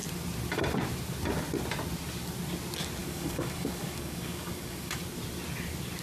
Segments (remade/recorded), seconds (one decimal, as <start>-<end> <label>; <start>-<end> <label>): 0.0-3.0 recorded; 3.0-5.0 remade; 5.0-6.0 recorded

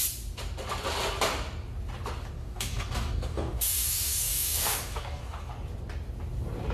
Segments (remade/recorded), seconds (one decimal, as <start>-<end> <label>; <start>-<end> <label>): 0.0-2.4 recorded; 2.4-5.5 remade; 5.5-6.7 recorded

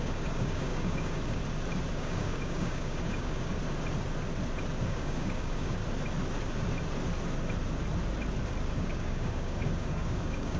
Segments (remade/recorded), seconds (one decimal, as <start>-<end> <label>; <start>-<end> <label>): 0.0-1.4 remade; 1.4-1.9 recorded; 1.9-3.5 remade; 3.5-4.8 recorded; 4.8-5.8 remade; 5.8-8.7 recorded; 8.7-10.6 remade

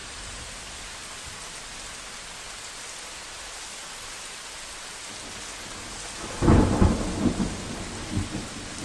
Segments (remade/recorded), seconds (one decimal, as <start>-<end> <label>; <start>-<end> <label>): 0.0-8.8 recorded

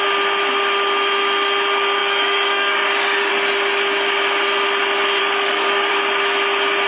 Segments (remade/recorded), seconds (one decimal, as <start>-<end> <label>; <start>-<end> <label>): 0.0-2.0 recorded; 2.0-3.3 remade; 3.3-5.2 recorded; 5.2-5.9 remade; 5.9-6.9 recorded

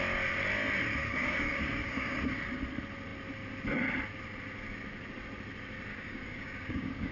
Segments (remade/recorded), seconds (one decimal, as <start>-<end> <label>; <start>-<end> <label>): 0.0-1.0 recorded; 1.0-2.2 remade; 2.2-5.9 recorded; 5.9-7.1 remade